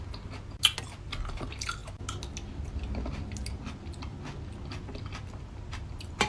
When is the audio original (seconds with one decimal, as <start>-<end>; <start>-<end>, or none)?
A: 0.0-6.3

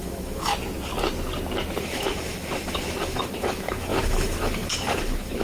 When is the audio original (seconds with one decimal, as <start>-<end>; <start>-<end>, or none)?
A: 0.5-1.8